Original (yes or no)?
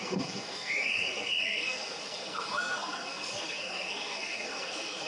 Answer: no